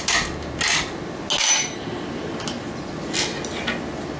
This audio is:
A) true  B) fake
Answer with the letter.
A